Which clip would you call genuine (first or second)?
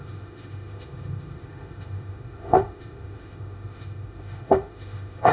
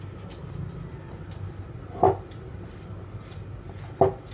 second